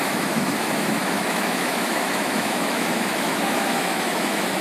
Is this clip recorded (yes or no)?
no